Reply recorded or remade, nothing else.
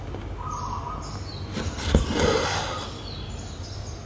recorded